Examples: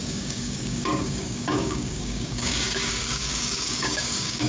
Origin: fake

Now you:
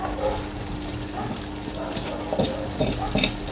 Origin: real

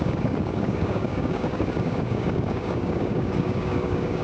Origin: fake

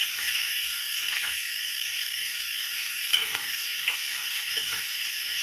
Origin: fake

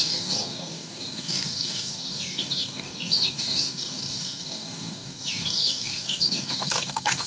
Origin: fake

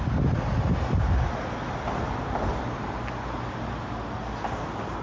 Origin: real